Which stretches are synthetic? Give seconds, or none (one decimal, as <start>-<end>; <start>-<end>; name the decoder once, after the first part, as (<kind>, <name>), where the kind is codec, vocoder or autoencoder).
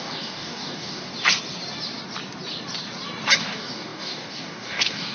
0.0-1.1 (codec, DAC); 3.4-5.1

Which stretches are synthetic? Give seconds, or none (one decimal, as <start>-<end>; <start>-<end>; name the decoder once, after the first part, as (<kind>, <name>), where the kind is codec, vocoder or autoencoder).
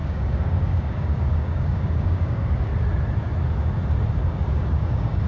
0.0-2.7 (codec, DAC); 4.1-5.3